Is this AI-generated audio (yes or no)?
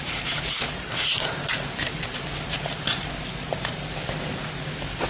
no